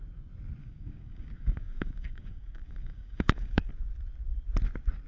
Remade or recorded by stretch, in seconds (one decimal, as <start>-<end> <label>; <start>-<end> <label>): 0.0-0.6 recorded; 0.6-3.7 remade; 3.7-5.1 recorded